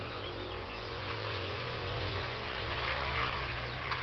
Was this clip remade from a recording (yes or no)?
yes